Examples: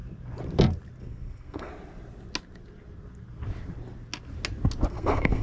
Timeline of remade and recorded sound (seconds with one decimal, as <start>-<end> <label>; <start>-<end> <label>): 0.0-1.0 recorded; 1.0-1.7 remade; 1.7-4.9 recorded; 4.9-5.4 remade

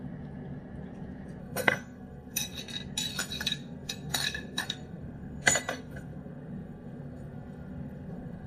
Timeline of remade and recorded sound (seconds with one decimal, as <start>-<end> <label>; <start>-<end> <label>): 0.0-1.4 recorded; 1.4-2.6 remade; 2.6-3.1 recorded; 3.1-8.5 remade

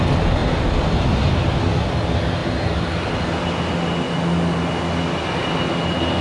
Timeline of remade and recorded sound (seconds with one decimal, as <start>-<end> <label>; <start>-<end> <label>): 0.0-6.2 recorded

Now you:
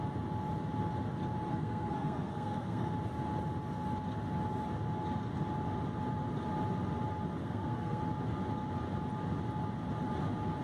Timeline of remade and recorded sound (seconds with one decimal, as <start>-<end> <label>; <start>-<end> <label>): 0.0-1.5 recorded; 1.5-2.9 remade; 2.9-7.4 recorded; 7.4-8.0 remade; 8.0-10.6 recorded

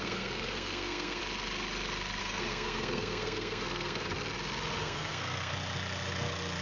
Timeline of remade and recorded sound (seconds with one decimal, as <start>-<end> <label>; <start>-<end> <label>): 0.0-1.2 remade; 1.2-2.2 recorded; 2.2-4.1 remade; 4.1-4.8 recorded; 4.8-5.5 remade; 5.5-6.6 recorded

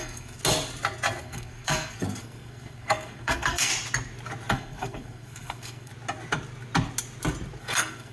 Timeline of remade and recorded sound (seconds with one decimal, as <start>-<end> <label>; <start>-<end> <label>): 0.0-0.4 remade; 0.4-1.2 recorded; 1.2-3.7 remade; 3.7-4.5 recorded; 4.5-5.9 remade; 5.9-7.6 recorded; 7.6-8.1 remade